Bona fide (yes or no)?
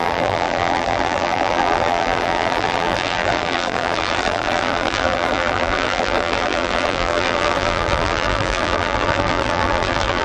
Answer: no